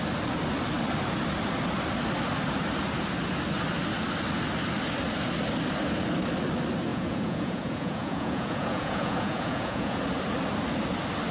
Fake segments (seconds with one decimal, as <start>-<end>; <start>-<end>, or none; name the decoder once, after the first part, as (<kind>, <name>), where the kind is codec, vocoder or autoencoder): 6.9-10.0 (vocoder, Vocos)